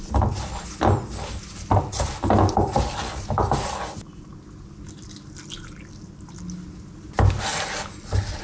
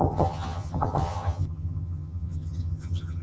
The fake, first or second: second